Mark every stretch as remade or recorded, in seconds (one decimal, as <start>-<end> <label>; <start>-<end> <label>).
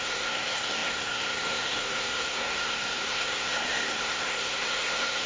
0.0-5.3 remade